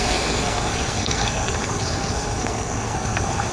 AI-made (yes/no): yes